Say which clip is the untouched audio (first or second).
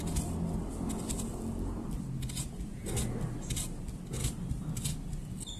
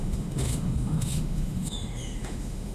first